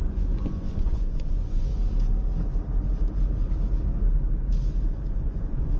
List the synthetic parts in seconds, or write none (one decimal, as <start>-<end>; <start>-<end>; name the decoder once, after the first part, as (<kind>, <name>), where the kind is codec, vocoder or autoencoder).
0.0-1.7 (vocoder, Vocos); 5.1-5.8